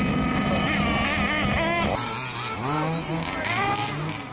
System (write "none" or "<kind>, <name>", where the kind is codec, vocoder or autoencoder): none